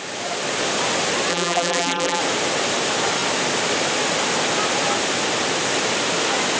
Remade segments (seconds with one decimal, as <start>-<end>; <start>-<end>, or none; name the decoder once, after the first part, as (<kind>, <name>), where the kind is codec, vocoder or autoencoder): 1.3-2.2 (vocoder, BigVGAN v2)